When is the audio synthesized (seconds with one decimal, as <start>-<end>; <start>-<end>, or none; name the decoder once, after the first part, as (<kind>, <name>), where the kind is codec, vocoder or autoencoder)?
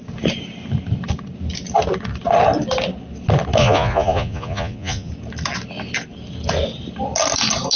3.6-5.1 (vocoder, Vocos)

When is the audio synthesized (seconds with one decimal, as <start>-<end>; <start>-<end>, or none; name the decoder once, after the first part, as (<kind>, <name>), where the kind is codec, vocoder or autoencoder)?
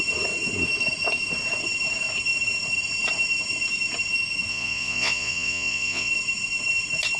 4.5-6.1 (vocoder, Vocos)